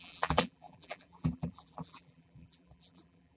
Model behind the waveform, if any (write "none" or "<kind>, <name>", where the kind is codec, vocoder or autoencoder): vocoder, BigVGAN v2